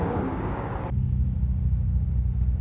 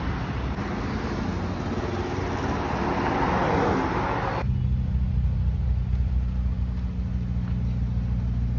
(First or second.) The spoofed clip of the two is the first